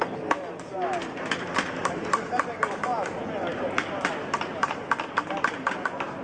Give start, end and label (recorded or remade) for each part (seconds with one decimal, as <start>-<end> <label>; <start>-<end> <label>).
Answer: 0.0-6.2 recorded